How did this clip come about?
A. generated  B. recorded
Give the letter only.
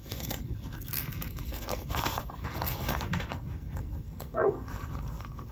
A